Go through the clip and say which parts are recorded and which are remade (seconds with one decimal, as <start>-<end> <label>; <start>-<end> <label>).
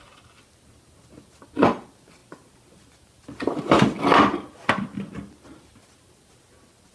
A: 0.0-6.9 recorded